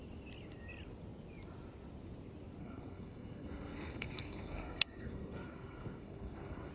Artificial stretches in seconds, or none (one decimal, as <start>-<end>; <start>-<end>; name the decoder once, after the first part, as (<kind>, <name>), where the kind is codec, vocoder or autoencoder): 2.6-6.7 (codec, SNAC)